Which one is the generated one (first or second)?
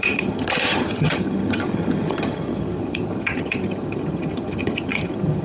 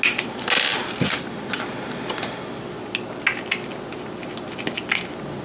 first